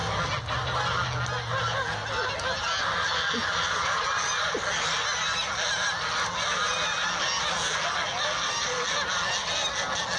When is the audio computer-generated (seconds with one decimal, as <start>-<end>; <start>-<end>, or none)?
none